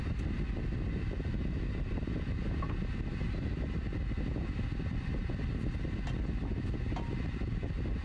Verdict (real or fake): real